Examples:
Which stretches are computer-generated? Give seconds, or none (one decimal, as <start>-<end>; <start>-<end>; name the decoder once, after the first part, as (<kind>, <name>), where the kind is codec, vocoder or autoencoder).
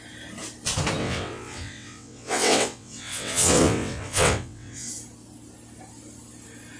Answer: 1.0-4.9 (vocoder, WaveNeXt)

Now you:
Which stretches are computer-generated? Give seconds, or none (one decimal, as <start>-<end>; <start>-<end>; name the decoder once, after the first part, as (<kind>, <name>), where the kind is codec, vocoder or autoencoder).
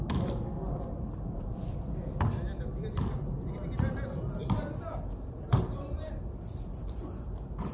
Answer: none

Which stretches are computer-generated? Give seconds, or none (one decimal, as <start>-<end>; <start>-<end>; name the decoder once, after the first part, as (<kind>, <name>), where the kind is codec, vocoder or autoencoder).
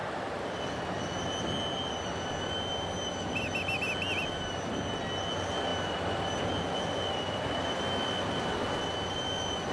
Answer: none